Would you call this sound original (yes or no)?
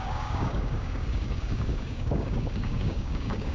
no